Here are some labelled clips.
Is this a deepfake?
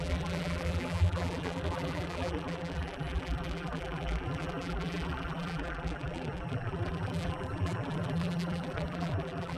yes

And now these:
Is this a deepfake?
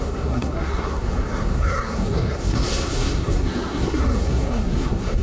yes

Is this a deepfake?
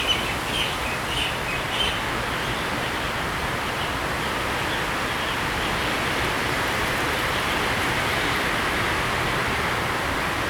no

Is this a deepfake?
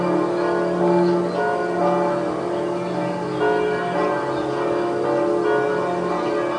no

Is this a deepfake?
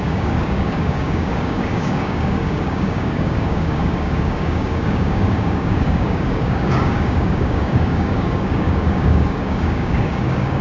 yes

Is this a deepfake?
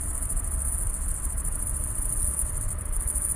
yes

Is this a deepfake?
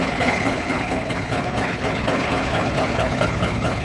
yes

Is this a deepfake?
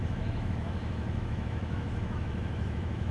yes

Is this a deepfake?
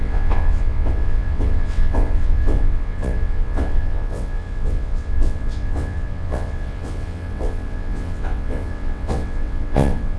yes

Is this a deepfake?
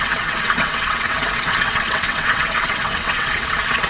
yes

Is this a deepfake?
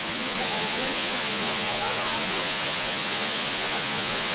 yes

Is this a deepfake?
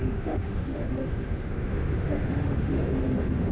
yes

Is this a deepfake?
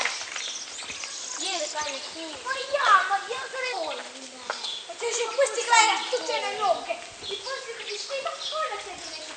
no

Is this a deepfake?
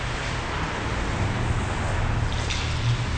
no